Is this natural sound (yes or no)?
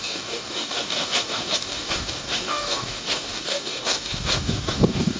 no